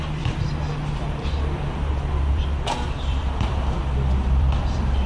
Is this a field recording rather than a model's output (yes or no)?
no